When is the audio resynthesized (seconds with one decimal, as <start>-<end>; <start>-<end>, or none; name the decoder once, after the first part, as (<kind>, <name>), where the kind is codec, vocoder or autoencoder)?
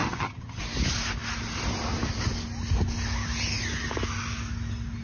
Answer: 0.0-0.6 (vocoder, HiFi-GAN)